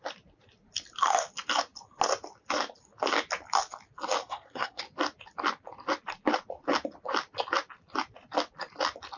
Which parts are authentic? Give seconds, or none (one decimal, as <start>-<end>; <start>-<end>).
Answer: 0.0-4.2; 4.8-9.2